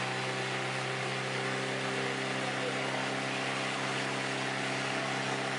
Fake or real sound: real